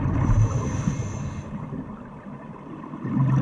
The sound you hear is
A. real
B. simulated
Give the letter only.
B